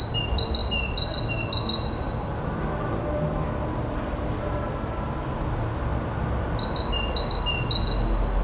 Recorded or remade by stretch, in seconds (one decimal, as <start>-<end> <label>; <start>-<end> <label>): 0.0-8.4 recorded